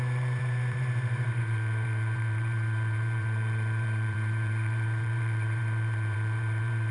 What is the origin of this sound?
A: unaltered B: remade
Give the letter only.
B